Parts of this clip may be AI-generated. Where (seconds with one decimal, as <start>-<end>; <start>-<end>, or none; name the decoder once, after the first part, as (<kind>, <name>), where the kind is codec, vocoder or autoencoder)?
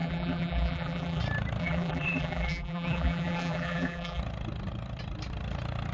0.0-1.2 (vocoder, BigVGAN v2); 1.6-4.2